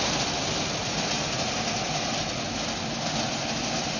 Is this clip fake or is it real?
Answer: real